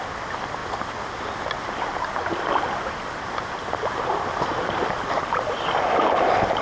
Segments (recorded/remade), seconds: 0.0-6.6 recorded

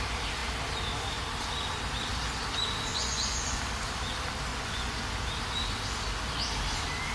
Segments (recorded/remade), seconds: 0.0-2.9 recorded; 2.9-3.6 remade; 3.6-4.5 recorded; 4.5-5.0 remade; 5.0-7.1 recorded

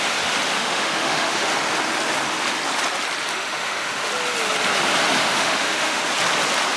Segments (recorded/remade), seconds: 0.0-0.6 recorded; 0.6-1.5 remade; 1.5-3.3 recorded; 3.3-4.1 remade; 4.1-5.2 recorded; 5.2-6.0 remade; 6.0-6.8 recorded

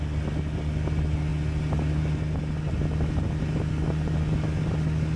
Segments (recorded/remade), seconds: 0.0-5.2 recorded

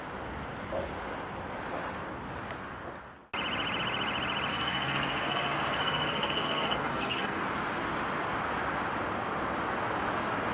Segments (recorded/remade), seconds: 0.0-4.5 recorded; 4.5-7.4 remade; 7.4-10.5 recorded

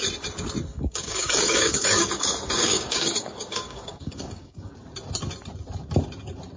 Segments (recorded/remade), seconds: 0.0-0.7 recorded; 0.7-4.7 remade; 4.7-6.6 recorded

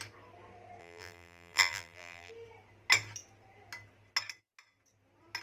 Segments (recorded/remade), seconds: 0.0-0.8 recorded; 0.8-2.3 remade; 2.3-5.4 recorded